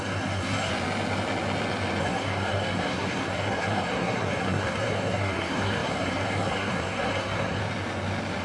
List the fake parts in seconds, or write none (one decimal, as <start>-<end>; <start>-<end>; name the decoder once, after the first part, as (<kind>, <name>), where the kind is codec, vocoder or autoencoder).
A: 0.0-0.7 (codec, SNAC); 2.0-7.6